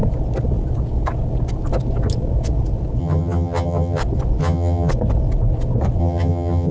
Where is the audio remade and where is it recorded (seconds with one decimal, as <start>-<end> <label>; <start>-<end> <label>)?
0.0-3.0 recorded; 3.0-4.0 remade; 4.0-4.4 recorded; 4.4-4.9 remade; 4.9-6.0 recorded; 6.0-6.7 remade